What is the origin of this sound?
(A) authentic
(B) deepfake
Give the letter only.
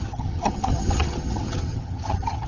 B